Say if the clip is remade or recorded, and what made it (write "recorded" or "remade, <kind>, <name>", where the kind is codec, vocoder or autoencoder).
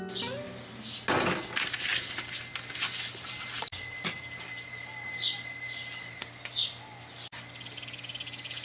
recorded